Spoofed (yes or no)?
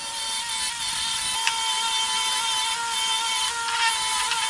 no